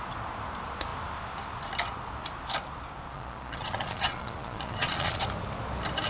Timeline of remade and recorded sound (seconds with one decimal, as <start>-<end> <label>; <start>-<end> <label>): 0.0-3.1 recorded; 3.1-5.2 remade; 5.2-6.1 recorded